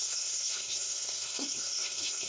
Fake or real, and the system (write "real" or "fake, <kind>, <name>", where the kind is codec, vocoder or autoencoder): fake, codec, SNAC